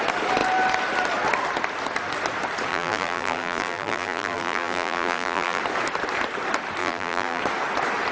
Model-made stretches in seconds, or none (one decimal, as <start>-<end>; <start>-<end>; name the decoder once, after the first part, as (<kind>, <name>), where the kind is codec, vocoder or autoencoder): 2.7-5.6 (vocoder, BigVGAN v2); 6.8-7.4